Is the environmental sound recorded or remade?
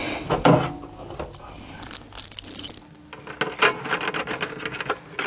recorded